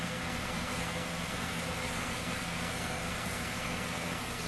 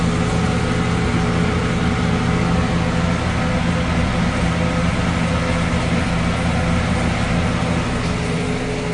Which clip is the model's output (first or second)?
first